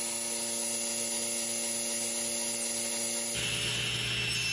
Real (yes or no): yes